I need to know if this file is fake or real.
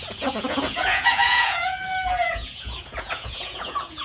fake